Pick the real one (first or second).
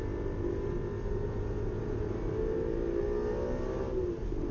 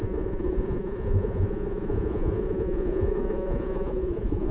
first